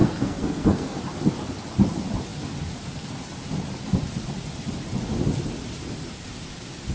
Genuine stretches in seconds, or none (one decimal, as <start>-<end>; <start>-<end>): 1.0-6.9